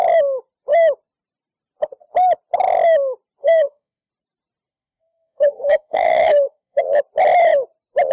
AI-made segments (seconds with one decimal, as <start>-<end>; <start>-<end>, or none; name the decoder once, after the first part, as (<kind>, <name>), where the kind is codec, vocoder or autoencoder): 3.4-4.1 (codec, SNAC); 4.7-6.8